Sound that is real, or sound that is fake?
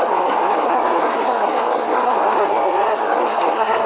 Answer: fake